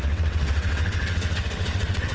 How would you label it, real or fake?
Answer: fake